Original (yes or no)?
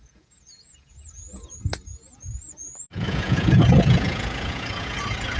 no